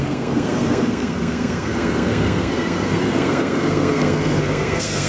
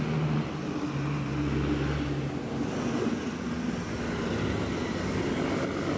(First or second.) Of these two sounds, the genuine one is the second